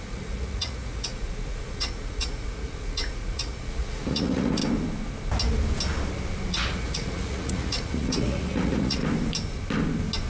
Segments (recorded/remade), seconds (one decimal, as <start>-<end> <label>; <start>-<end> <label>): 0.0-4.6 remade; 4.6-6.5 recorded; 6.5-9.0 remade; 9.0-10.3 recorded

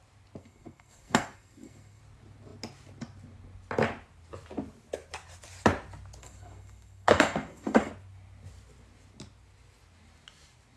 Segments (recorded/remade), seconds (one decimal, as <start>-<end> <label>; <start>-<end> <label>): 0.0-0.4 recorded; 0.4-2.0 remade; 2.0-6.2 recorded; 6.2-7.9 remade; 7.9-10.8 recorded